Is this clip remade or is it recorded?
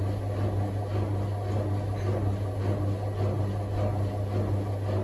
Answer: recorded